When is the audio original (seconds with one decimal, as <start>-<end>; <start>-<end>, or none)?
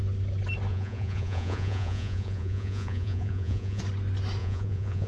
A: 0.0-0.7; 3.8-4.4